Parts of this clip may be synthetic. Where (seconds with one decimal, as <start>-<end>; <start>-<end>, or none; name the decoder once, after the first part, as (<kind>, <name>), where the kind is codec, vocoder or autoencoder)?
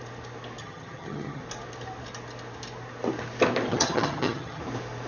0.6-1.4 (vocoder, HiFi-GAN); 3.7-4.6